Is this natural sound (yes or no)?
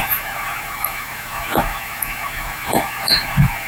no